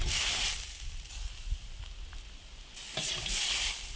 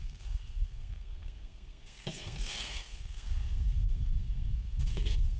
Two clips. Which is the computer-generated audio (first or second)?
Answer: second